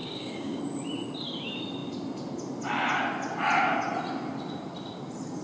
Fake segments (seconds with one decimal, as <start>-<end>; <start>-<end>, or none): 0.0-0.6